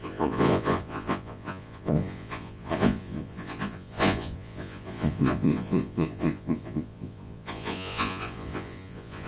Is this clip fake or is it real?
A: fake